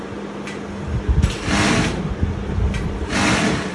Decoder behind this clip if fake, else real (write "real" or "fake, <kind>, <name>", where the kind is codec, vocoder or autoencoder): real